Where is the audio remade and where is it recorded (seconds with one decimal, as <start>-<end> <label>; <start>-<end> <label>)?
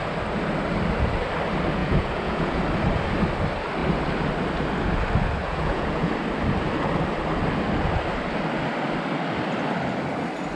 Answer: 0.0-1.8 recorded; 1.8-2.6 remade; 2.6-5.4 recorded; 5.4-6.1 remade; 6.1-10.6 recorded